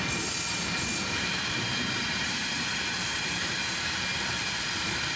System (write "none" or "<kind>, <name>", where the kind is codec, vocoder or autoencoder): vocoder, BigVGAN v2